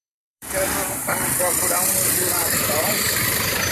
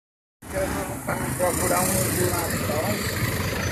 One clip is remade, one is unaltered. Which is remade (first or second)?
first